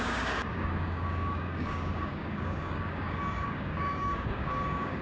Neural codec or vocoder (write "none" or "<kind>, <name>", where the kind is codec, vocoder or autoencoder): codec, DAC